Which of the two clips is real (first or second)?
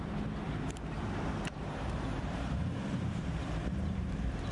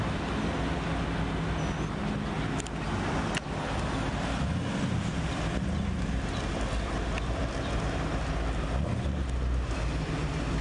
second